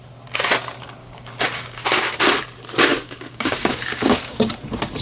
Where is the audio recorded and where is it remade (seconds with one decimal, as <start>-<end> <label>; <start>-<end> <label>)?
0.0-1.0 recorded; 1.0-1.8 remade; 1.8-2.9 recorded; 2.9-4.5 remade; 4.5-5.0 recorded

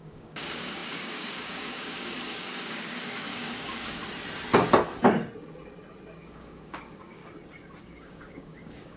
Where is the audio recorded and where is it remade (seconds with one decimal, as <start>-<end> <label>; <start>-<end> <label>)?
0.0-4.0 remade; 4.0-6.2 recorded; 6.2-7.2 remade; 7.2-7.8 recorded; 7.8-9.0 remade

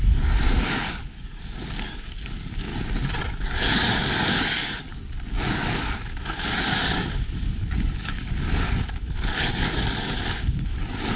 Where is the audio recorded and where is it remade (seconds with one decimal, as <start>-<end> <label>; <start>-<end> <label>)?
0.0-2.7 remade; 2.7-3.4 recorded; 3.4-4.9 remade; 4.9-5.5 recorded; 5.5-11.2 remade

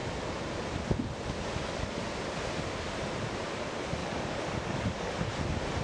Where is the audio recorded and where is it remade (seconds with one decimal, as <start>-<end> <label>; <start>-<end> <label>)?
0.0-4.0 recorded; 4.0-5.3 remade; 5.3-5.8 recorded

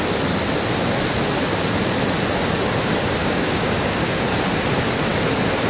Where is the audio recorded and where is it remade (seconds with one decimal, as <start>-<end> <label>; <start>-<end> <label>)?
0.0-3.2 recorded; 3.2-4.2 remade; 4.2-5.7 recorded

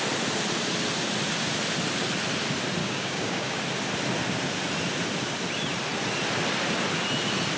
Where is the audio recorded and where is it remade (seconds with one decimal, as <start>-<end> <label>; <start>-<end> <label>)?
0.0-2.8 recorded; 2.8-3.6 remade; 3.6-7.6 recorded